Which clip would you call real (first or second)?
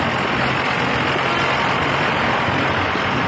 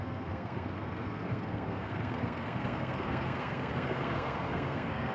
first